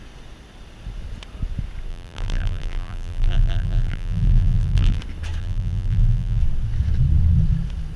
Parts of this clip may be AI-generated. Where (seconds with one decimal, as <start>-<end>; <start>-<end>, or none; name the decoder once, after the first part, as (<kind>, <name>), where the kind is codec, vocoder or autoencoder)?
1.9-5.0 (vocoder, BigVGAN v2); 5.4-6.4